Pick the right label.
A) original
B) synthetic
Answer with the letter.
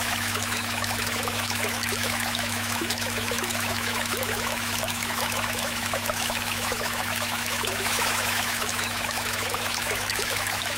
B